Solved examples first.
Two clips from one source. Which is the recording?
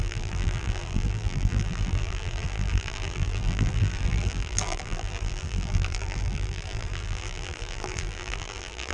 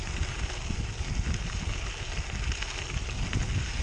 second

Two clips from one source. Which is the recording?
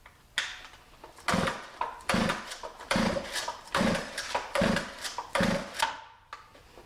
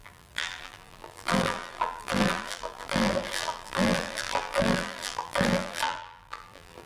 first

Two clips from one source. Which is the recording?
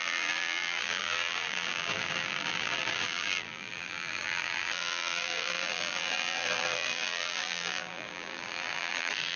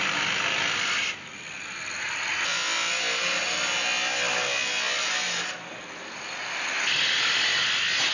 second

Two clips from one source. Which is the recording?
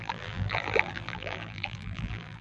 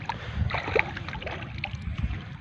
second